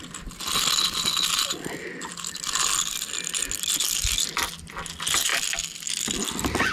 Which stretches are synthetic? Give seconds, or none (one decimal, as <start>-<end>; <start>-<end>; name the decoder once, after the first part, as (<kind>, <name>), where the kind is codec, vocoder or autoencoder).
5.3-6.3 (vocoder, BigVGAN v2)